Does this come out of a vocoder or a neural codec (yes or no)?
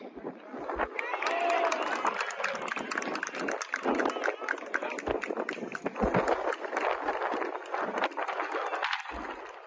no